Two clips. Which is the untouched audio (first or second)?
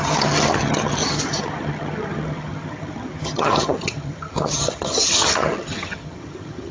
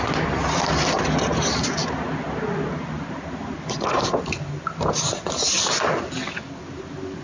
second